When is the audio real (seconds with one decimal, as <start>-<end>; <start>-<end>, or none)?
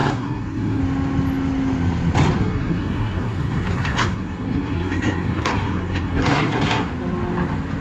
0.8-2.4; 6.9-7.8